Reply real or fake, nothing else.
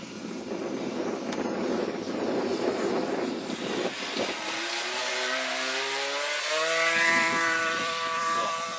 fake